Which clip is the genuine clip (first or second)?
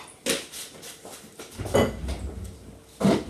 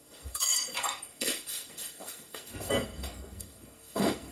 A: first